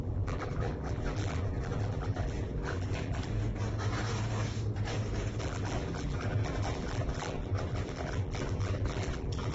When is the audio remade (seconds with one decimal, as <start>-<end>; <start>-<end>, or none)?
0.0-3.3; 5.4-9.5